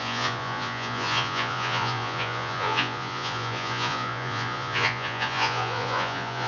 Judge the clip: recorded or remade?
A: remade